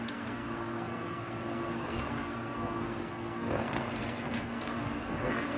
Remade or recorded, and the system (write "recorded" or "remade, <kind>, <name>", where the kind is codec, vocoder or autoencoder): remade, codec, SNAC